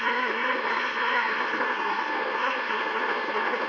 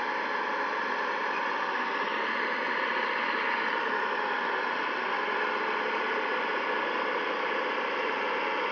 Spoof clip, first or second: first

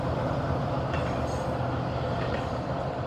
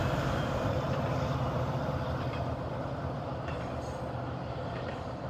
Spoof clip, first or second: second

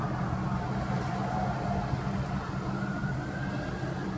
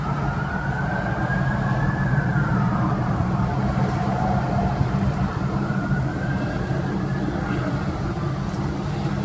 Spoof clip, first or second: second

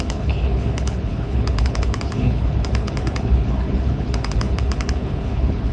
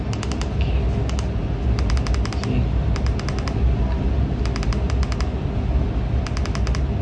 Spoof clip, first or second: first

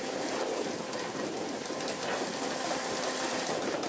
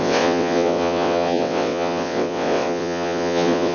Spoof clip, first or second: second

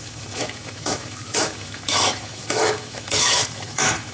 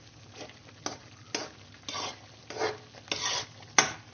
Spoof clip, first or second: first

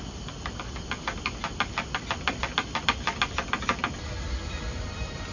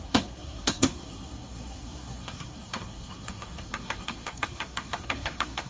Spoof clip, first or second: second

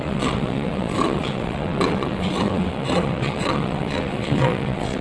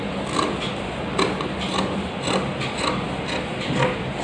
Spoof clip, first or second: first